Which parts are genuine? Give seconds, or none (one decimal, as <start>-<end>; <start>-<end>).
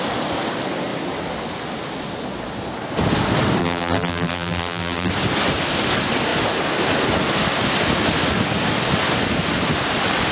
0.0-3.6; 5.1-10.3